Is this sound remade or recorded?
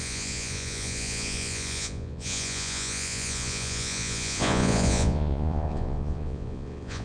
remade